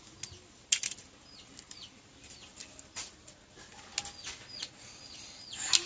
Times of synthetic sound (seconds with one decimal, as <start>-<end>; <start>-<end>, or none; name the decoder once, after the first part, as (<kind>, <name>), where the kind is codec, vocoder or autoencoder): none